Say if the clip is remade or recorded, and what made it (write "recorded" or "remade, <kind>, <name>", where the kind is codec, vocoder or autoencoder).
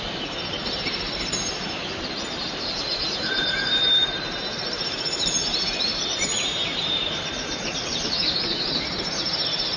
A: remade, vocoder, BigVGAN v2